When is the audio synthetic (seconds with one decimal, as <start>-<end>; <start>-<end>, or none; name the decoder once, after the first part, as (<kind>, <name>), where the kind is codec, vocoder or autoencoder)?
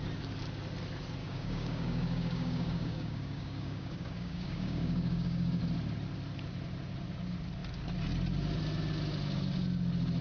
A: 1.2-5.6 (codec, DAC)